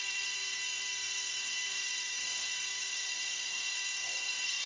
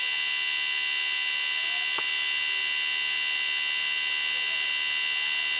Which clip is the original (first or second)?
second